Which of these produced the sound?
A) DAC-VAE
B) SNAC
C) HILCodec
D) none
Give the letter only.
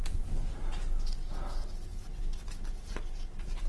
D